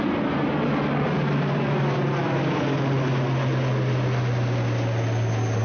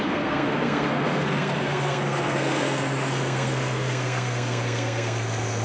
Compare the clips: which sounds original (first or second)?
first